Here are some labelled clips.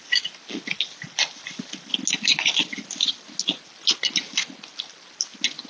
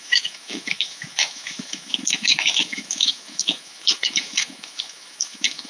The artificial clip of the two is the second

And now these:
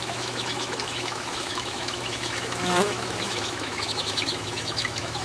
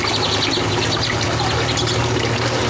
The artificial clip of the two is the first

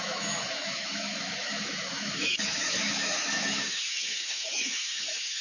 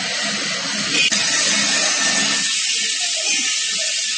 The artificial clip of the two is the first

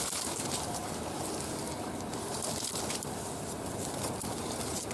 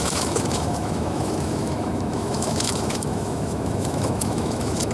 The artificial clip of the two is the second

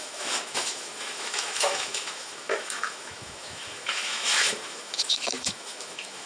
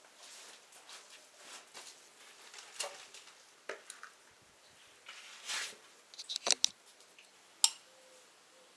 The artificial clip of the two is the first